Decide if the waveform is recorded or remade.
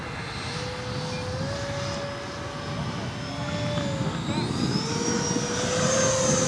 recorded